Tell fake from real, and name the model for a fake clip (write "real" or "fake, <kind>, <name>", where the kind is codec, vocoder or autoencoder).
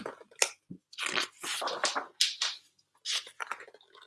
real